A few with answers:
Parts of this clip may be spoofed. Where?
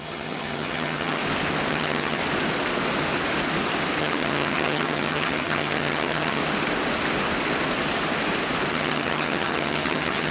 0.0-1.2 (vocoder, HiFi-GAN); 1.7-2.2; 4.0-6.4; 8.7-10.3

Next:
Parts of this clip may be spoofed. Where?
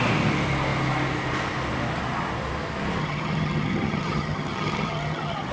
3.0-5.5 (vocoder, HiFi-GAN)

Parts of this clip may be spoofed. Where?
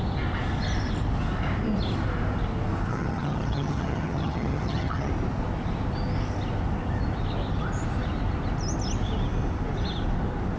2.9-5.1 (vocoder, HiFi-GAN)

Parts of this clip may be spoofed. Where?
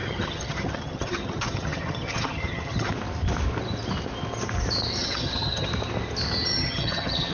0.0-2.9 (vocoder, HiFi-GAN); 5.0-5.7; 6.5-7.3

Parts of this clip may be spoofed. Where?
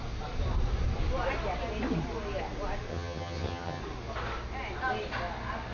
2.9-3.8 (vocoder, HiFi-GAN)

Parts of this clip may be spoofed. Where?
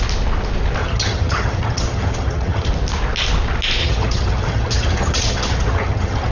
0.8-2.7 (vocoder, HiFi-GAN); 3.8-6.3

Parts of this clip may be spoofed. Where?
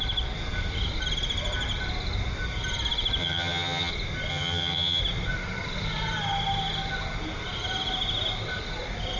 3.2-3.9 (vocoder, HiFi-GAN); 4.3-5.0